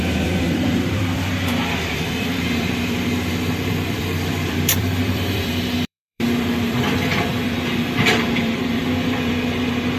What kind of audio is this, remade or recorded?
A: remade